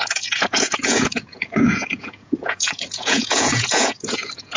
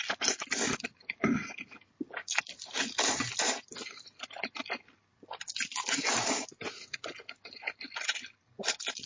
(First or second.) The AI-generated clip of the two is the first